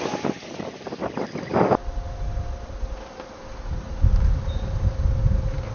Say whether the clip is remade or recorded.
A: recorded